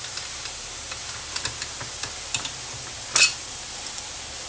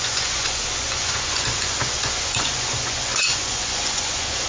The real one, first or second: first